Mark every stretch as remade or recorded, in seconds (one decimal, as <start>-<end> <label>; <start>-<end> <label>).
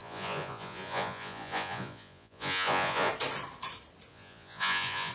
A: 0.0-3.1 remade; 3.1-4.1 recorded; 4.1-5.1 remade